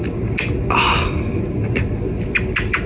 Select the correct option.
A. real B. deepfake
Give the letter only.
A